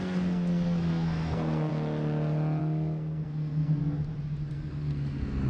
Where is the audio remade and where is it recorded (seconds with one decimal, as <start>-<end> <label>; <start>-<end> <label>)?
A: 0.0-1.7 remade; 1.7-2.6 recorded; 2.6-3.8 remade; 3.8-4.5 recorded; 4.5-5.5 remade